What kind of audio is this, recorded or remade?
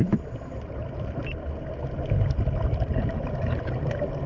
recorded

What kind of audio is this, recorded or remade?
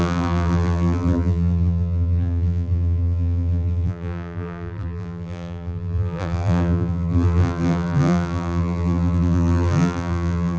remade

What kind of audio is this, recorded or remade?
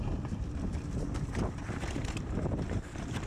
remade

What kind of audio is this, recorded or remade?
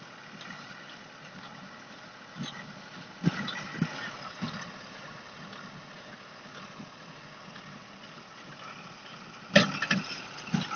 recorded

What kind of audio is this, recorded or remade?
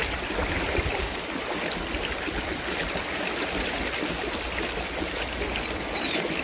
recorded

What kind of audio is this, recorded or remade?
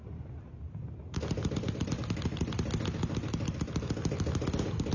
recorded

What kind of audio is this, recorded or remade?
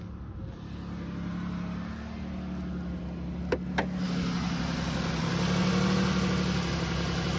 recorded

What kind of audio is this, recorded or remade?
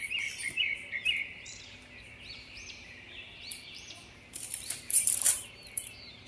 remade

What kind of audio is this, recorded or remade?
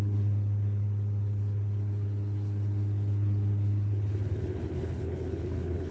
remade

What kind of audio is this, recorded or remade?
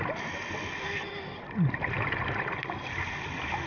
recorded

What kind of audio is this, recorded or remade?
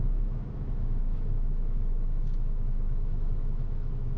remade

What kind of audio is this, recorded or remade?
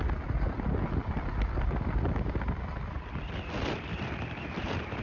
recorded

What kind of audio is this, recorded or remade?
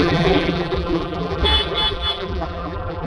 remade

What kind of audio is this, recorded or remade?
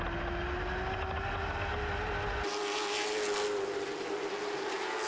recorded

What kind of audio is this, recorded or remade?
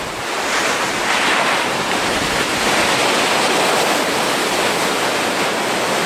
recorded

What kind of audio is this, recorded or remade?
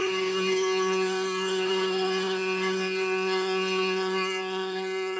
remade